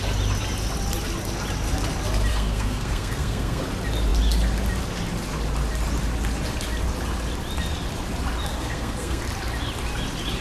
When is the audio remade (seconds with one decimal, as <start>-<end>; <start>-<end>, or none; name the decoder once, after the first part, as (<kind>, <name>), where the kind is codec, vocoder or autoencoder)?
2.3-3.6 (codec, SNAC); 8.5-9.2